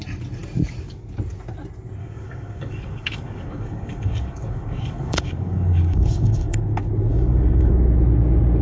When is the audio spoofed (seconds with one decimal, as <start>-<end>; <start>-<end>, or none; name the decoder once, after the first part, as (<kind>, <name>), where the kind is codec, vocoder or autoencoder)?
2.0-6.6 (codec, DAC); 7.1-7.7